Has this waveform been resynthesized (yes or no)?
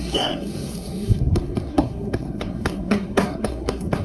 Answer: yes